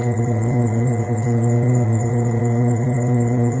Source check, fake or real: fake